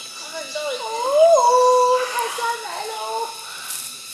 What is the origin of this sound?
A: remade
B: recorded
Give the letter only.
B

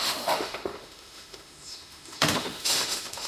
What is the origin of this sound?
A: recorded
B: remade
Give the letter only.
B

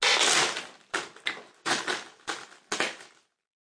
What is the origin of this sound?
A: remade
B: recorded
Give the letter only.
B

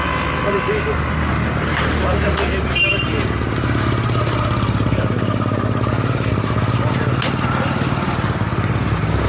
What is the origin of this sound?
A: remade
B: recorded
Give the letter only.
B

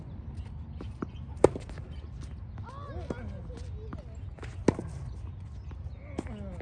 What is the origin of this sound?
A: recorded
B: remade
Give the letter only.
A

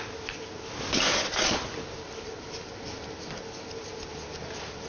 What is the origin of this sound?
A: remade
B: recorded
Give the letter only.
B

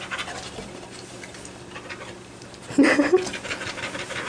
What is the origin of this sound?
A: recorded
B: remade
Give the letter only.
A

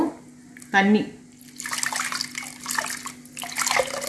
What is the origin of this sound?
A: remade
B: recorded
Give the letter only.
B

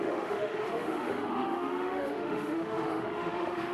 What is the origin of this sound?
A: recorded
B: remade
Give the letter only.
B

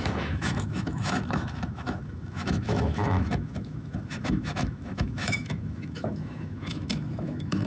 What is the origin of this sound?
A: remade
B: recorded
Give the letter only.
A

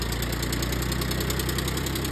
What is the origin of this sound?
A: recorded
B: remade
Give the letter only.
A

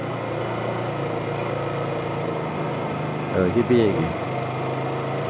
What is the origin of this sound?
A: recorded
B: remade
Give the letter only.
A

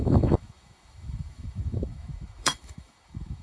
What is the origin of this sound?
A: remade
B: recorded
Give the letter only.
A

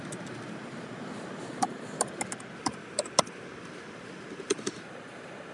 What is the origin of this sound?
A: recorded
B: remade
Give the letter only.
A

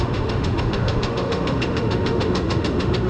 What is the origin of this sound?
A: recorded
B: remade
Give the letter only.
B